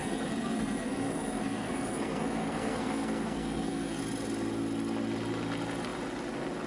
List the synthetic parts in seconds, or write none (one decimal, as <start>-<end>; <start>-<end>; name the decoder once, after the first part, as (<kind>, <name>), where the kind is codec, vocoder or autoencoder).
0.0-4.0 (codec, SNAC)